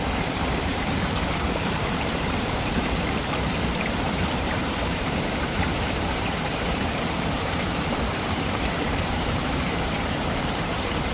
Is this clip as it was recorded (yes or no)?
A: no